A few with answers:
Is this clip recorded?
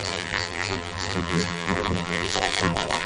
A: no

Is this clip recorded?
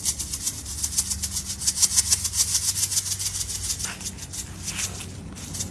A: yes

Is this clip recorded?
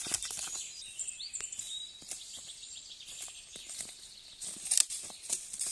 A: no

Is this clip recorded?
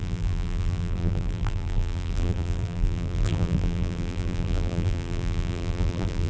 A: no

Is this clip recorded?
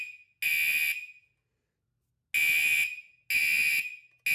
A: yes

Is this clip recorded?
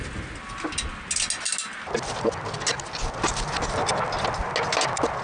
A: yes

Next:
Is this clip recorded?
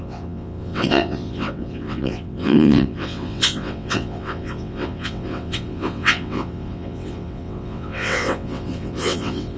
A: no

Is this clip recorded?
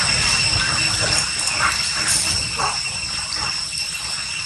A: yes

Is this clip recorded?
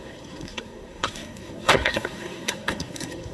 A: no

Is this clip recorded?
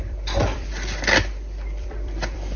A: no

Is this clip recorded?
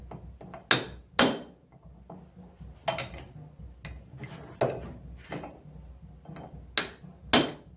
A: yes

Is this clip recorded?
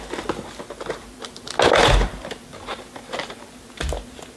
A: yes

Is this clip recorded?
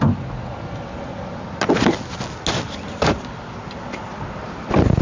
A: yes